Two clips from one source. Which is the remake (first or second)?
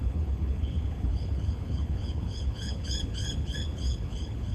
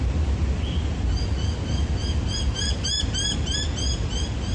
first